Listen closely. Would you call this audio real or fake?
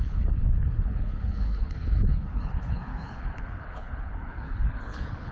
fake